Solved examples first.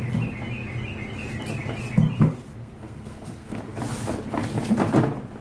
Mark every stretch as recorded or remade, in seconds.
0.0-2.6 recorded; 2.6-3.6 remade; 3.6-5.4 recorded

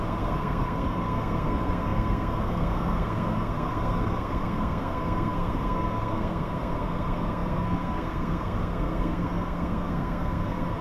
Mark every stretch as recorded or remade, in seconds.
0.0-10.8 remade